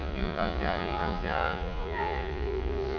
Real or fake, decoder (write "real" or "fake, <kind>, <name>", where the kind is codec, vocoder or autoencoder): fake, vocoder, Vocos